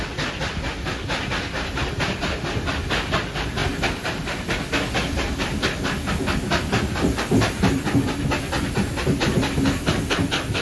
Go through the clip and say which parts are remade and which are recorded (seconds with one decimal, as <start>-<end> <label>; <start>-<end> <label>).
0.0-10.6 recorded